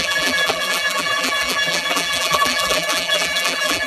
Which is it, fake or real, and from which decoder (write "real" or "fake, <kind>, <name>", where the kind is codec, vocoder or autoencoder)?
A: fake, vocoder, BigVGAN v2